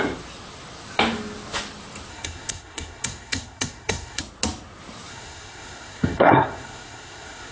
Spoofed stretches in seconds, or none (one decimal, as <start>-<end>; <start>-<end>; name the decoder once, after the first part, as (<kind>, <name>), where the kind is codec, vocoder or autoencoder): 2.1-4.2 (codec, SNAC); 5.1-7.5